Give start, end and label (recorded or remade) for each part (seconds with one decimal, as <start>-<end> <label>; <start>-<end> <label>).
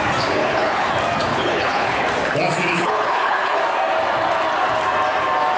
0.0-0.4 recorded; 0.4-0.9 remade; 0.9-1.3 recorded; 1.3-2.0 remade; 2.0-2.7 recorded; 2.7-3.6 remade; 3.6-5.6 recorded